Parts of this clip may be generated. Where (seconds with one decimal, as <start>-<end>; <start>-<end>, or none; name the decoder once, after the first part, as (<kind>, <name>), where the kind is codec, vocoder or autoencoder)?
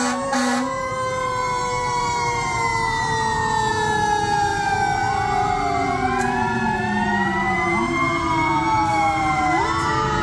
0.0-2.7 (vocoder, BigVGAN v2); 3.7-10.2